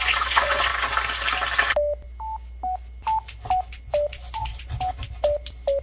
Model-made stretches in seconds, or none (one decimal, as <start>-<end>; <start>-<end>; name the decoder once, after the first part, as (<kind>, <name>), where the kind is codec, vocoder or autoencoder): 0.0-0.7 (vocoder, Vocos); 4.1-4.5